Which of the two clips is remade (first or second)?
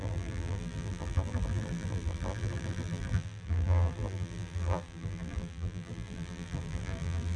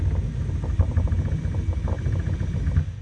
first